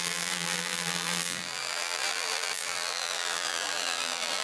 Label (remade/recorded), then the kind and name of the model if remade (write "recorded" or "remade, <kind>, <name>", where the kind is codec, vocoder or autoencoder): remade, vocoder, BigVGAN v2